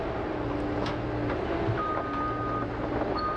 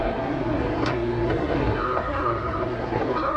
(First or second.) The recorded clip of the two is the first